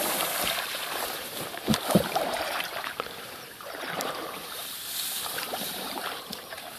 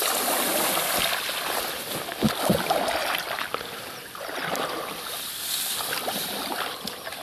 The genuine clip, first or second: second